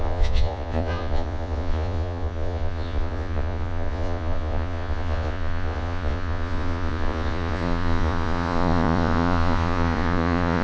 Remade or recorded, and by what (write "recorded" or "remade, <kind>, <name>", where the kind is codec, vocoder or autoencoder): remade, vocoder, Vocos